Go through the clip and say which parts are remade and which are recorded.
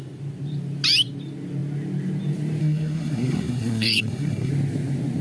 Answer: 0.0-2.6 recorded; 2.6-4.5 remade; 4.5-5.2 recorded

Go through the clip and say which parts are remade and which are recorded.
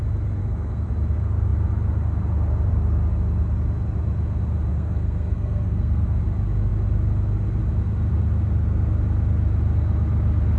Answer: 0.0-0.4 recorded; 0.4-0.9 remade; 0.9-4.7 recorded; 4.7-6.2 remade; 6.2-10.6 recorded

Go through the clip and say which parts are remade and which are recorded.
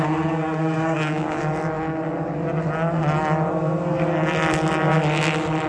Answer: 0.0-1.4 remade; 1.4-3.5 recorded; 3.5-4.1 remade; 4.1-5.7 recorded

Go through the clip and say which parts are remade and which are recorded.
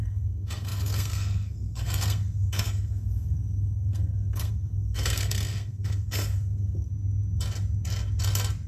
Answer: 0.0-6.9 remade; 6.9-8.7 recorded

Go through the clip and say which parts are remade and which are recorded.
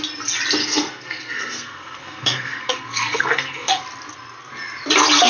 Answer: 0.0-0.6 recorded; 0.6-3.8 remade; 3.8-5.3 recorded